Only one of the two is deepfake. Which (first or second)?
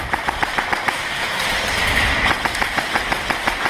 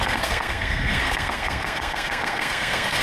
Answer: second